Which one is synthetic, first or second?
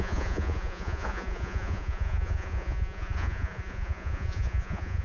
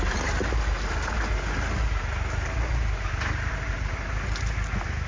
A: first